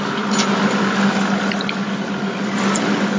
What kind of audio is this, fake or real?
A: real